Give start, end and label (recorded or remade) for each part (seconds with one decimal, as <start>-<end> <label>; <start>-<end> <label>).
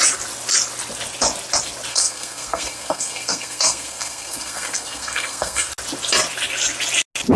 0.0-1.9 recorded; 1.9-5.7 remade; 5.7-7.4 recorded